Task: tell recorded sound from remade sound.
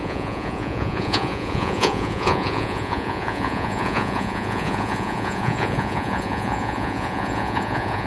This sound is remade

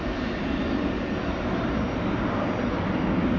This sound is recorded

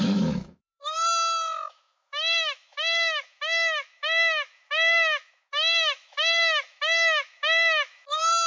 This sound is remade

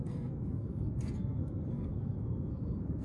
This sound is remade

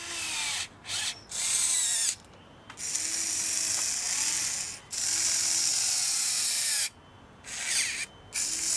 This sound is recorded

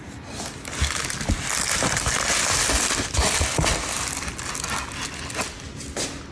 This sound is recorded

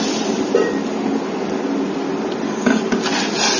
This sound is recorded